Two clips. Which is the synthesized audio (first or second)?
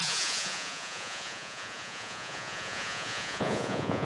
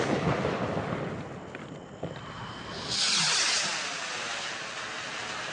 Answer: first